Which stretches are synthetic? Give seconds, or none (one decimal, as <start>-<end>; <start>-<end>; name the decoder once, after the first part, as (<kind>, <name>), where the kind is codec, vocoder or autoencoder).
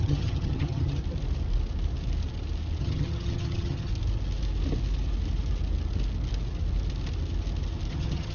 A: 0.0-1.0 (vocoder, HiFi-GAN); 2.8-3.9; 7.9-8.3